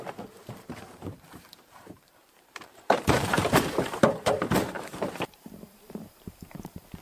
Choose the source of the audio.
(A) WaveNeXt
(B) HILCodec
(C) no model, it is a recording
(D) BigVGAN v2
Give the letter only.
D